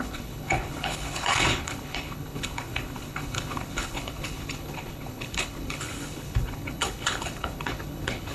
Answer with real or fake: fake